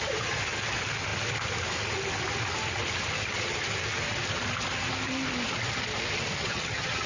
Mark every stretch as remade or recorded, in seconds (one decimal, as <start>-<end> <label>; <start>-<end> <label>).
0.0-6.4 recorded; 6.4-7.1 remade